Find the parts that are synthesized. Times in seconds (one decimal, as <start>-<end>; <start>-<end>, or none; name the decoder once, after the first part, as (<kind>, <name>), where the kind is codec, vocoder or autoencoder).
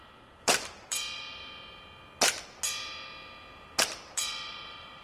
0.0-1.4 (vocoder, BigVGAN v2); 3.8-5.0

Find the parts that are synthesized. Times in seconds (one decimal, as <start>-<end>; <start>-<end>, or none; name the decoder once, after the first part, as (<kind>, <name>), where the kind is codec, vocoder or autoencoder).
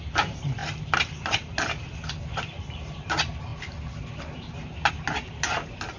none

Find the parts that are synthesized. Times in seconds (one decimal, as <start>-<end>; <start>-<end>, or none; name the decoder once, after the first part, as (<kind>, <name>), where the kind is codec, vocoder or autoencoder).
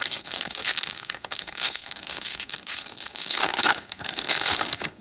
0.0-5.0 (codec, SNAC)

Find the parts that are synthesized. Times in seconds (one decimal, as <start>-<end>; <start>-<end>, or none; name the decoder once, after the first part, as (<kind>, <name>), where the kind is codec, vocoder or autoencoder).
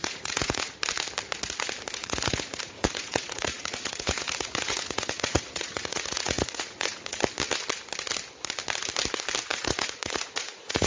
0.0-0.7 (vocoder, Vocos); 2.0-7.2; 9.5-10.9